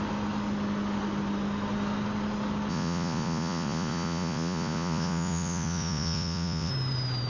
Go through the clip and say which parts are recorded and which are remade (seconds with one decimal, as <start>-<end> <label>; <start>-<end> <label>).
0.0-2.7 recorded; 2.7-6.7 remade; 6.7-7.3 recorded